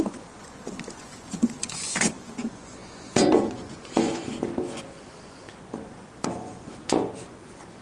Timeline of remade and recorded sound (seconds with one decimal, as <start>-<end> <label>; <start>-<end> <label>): 0.0-7.8 remade